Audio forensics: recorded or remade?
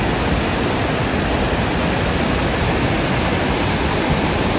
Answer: recorded